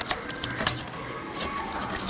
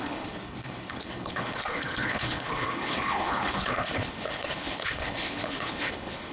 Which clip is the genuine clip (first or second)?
first